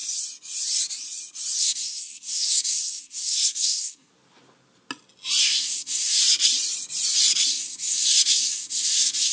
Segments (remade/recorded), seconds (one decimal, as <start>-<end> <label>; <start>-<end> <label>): 0.0-1.6 recorded; 1.6-4.1 remade; 4.1-5.4 recorded; 5.4-6.2 remade; 6.2-7.5 recorded; 7.5-9.3 remade